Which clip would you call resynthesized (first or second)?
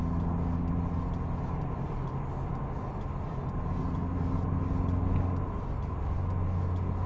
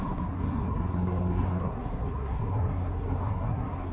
second